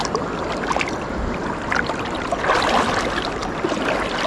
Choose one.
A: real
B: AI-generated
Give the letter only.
A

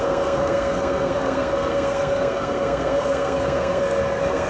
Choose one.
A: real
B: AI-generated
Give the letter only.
B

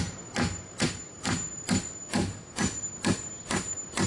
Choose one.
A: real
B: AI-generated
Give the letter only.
A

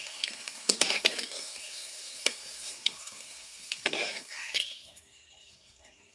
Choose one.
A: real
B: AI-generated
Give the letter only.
B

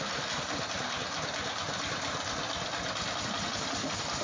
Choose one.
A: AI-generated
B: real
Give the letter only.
B